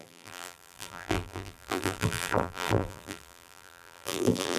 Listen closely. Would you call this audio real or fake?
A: fake